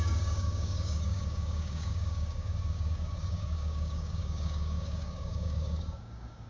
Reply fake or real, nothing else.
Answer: fake